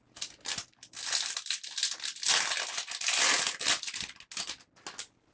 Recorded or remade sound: recorded